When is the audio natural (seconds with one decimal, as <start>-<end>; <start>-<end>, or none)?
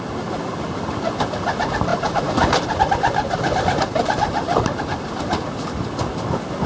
0.0-6.7